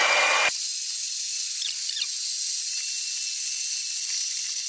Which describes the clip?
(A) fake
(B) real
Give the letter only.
B